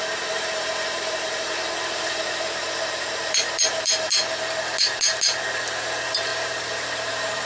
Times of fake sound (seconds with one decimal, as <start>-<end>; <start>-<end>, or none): 0.0-4.2; 5.4-7.5